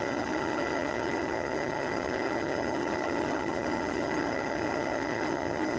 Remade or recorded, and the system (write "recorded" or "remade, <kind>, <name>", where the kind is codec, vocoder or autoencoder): remade, vocoder, HiFi-GAN